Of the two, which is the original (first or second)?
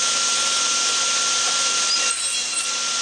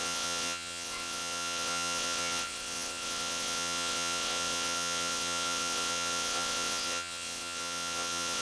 first